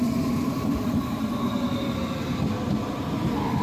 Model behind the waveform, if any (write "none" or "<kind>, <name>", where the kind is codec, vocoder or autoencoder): vocoder, BigVGAN v2